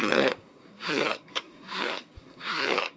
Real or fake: fake